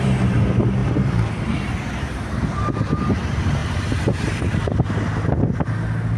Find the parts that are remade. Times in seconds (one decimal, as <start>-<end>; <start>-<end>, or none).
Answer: 0.8-2.7; 3.6-4.4